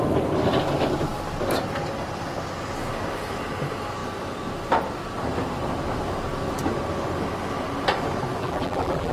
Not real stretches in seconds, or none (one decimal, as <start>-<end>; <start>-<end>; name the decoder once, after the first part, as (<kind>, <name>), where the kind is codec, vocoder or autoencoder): 8.4-9.1 (vocoder, BigVGAN v2)